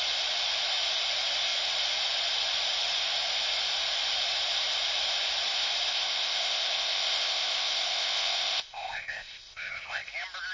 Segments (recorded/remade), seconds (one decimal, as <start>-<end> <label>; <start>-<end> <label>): 0.0-5.9 recorded; 5.9-10.1 remade; 10.1-10.5 recorded